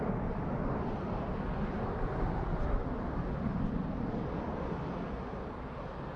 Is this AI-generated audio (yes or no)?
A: no